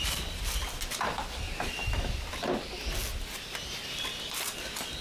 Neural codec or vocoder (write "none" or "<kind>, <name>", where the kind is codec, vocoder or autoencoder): none